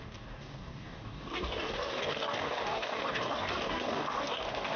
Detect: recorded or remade remade